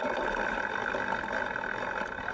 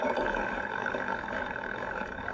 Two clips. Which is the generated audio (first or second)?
second